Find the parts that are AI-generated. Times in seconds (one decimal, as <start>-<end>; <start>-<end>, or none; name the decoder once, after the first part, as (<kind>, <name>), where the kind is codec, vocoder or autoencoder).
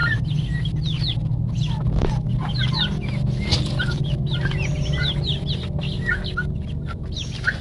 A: none